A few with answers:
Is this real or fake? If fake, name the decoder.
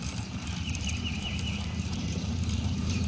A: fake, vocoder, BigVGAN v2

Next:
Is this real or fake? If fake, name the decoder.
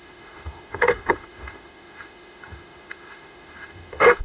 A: fake, autoencoder, DAC-VAE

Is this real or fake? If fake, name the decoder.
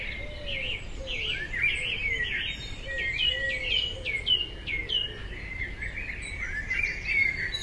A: real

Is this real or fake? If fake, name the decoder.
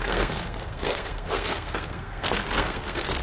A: fake, codec, SNAC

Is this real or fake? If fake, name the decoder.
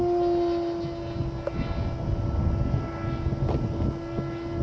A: real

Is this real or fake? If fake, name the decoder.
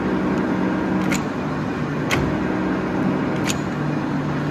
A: real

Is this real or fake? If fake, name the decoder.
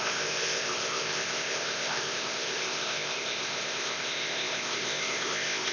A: fake, codec, ZipCodec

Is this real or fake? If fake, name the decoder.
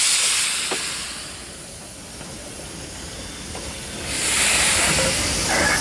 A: real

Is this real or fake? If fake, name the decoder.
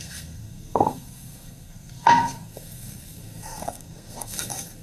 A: fake, codec, SNAC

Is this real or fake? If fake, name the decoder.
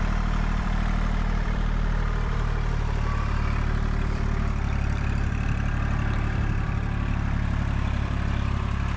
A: fake, vocoder, BigVGAN v2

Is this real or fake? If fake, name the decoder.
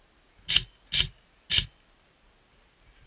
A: real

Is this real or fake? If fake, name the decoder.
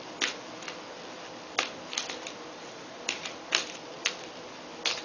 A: real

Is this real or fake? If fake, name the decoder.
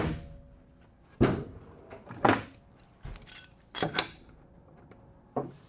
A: real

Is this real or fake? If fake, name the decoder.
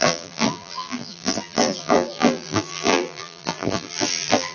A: fake, vocoder, BigVGAN v2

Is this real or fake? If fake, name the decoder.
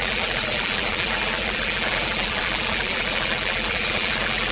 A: fake, vocoder, BigVGAN v2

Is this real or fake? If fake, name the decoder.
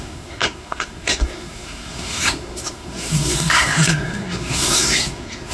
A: fake, codec, SNAC